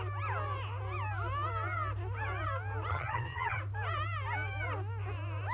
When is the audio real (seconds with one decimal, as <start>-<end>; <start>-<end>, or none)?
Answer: 0.0-2.9; 3.6-5.5